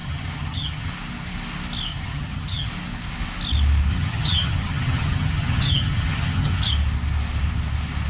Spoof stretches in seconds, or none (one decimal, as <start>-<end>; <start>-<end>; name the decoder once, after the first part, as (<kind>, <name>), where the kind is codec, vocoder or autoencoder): 0.0-0.9 (vocoder, HiFi-GAN); 1.9-2.7; 3.9-6.7